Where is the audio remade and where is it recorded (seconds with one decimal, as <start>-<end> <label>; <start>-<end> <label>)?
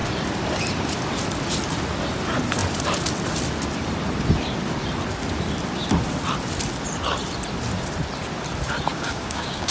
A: 0.0-8.9 recorded; 8.9-9.7 remade